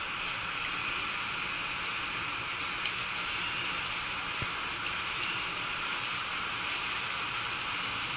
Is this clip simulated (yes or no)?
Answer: no